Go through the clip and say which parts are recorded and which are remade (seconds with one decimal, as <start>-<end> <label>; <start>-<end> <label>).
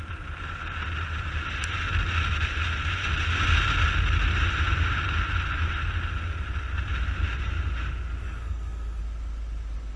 0.0-8.2 recorded; 8.2-9.0 remade; 9.0-10.0 recorded